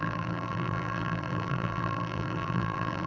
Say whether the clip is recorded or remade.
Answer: remade